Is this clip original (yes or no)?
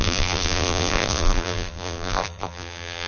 no